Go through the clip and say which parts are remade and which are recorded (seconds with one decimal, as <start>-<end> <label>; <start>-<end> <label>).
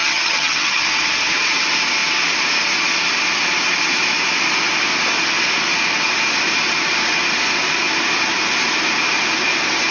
0.0-0.8 remade; 0.8-9.9 recorded